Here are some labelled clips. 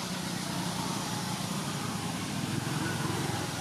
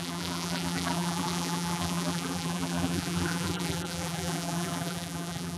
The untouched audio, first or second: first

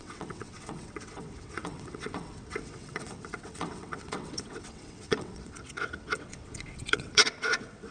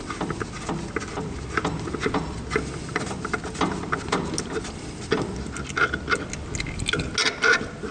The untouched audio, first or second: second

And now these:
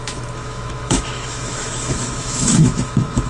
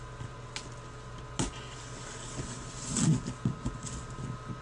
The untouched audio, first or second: second